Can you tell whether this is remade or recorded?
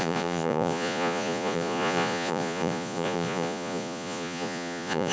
remade